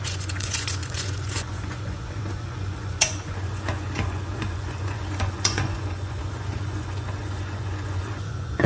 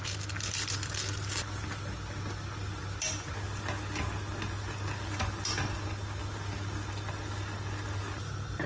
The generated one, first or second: first